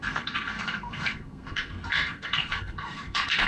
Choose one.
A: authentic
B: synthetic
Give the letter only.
B